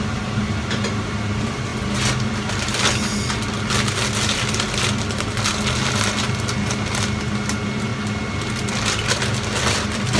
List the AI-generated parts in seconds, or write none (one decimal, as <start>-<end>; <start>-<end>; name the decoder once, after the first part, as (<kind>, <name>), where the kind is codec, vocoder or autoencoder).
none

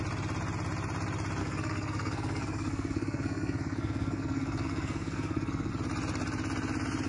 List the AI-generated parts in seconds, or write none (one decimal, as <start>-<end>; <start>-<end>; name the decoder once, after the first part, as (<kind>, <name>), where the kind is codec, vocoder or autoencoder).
1.4-5.7 (codec, SNAC)

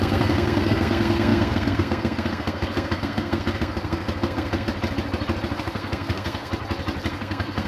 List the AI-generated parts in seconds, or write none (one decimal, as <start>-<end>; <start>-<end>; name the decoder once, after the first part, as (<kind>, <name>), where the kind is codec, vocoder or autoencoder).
0.0-4.7 (codec, SNAC); 5.6-6.5; 7.1-7.7

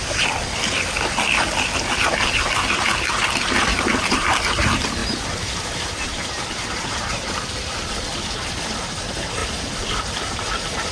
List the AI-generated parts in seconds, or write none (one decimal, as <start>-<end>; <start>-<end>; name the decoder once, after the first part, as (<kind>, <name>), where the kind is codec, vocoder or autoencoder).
0.0-2.9 (vocoder, BigVGAN v2); 3.4-9.4; 10.3-10.9